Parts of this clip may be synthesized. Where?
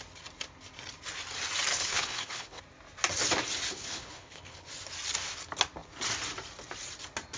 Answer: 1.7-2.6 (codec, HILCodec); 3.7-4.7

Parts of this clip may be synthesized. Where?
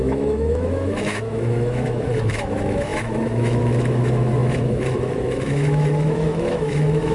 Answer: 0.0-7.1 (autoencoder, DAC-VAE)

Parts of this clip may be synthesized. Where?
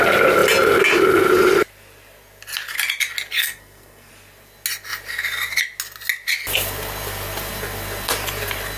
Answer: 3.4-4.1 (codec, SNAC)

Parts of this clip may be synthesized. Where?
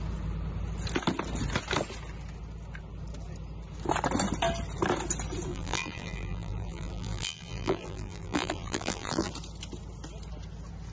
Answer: 5.5-9.3 (vocoder, BigVGAN v2)